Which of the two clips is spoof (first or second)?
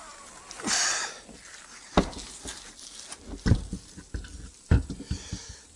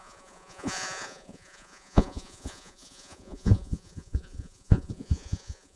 second